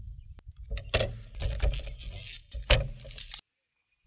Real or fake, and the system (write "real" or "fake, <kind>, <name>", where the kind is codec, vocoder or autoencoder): real